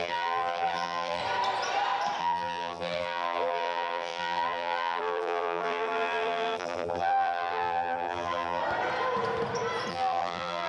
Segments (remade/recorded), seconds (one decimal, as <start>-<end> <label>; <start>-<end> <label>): 0.0-1.2 remade; 1.2-2.2 recorded; 2.2-8.6 remade; 8.6-9.9 recorded; 9.9-10.7 remade